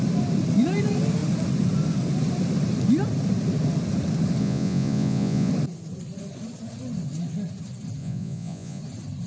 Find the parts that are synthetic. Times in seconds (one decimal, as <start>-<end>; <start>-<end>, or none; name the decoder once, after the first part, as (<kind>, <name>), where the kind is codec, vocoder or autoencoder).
4.4-5.5 (vocoder, Vocos); 8.0-8.8